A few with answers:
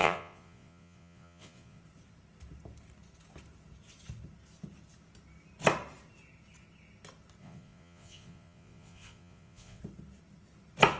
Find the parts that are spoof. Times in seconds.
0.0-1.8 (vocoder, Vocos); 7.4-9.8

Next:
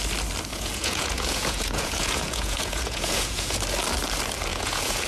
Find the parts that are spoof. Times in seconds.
0.5-3.6 (vocoder, Vocos); 4.5-5.1